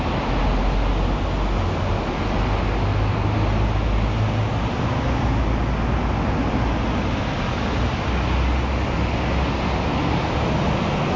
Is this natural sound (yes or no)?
yes